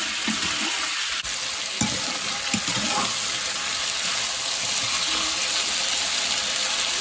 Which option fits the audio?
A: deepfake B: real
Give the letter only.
B